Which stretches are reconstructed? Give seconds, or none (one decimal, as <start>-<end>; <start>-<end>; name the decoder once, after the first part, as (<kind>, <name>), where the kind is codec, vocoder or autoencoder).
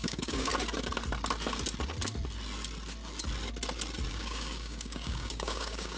0.0-0.5 (codec, DAC); 4.1-6.0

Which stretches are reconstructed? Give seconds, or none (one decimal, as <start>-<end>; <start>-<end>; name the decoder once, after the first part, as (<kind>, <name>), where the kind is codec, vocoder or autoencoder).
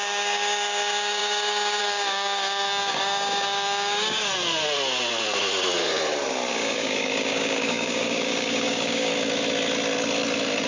0.0-4.3 (codec, DAC); 6.5-9.1